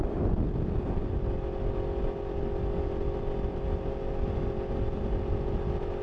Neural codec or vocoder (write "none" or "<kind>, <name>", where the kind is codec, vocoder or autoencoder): none